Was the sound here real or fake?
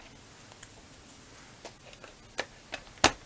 real